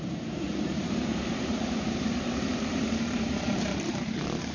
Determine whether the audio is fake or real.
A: fake